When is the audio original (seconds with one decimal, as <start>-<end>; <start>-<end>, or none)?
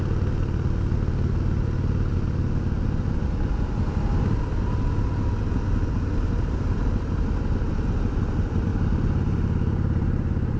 0.0-8.7